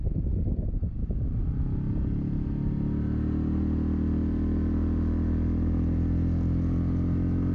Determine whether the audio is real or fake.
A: real